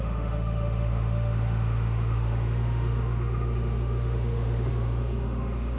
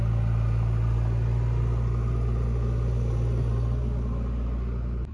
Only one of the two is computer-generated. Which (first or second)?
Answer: first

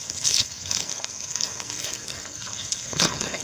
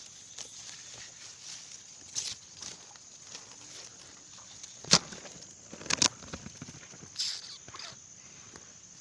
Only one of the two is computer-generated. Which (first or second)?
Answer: first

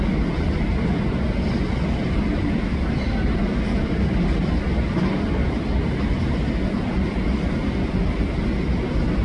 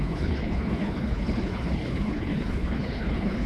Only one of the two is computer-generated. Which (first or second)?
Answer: second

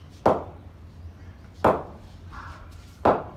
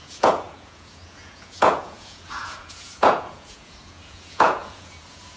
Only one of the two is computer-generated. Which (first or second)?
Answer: second